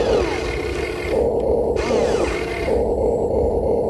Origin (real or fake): real